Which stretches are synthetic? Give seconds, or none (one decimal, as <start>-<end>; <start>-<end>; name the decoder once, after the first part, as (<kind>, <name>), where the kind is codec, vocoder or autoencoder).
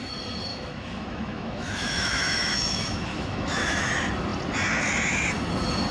0.5-3.9 (autoencoder, DAC-VAE)